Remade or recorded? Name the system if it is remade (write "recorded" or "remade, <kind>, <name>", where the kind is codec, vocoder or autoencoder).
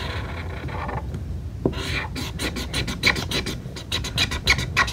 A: recorded